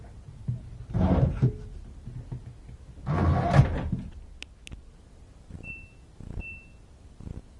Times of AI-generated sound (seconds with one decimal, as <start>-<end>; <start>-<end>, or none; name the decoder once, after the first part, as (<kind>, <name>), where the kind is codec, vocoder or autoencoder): none